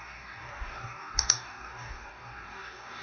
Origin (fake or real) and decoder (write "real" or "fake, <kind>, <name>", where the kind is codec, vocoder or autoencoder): fake, codec, DAC